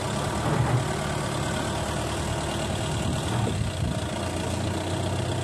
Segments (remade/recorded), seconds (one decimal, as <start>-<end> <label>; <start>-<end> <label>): 0.0-5.4 recorded